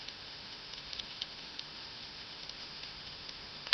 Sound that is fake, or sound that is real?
fake